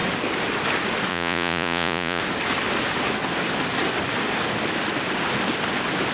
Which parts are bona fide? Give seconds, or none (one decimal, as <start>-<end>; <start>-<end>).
0.0-1.1; 2.2-6.1